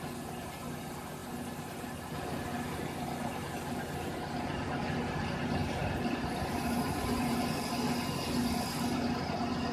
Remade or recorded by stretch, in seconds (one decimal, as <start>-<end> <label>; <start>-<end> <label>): 0.0-5.6 recorded; 5.6-7.8 remade; 7.8-8.4 recorded; 8.4-9.7 remade